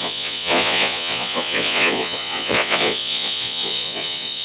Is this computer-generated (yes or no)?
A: yes